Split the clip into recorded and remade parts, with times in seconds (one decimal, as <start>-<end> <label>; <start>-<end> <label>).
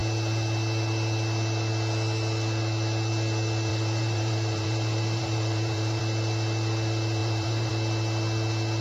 0.0-3.7 recorded; 3.7-6.0 remade; 6.0-7.2 recorded; 7.2-7.7 remade; 7.7-8.8 recorded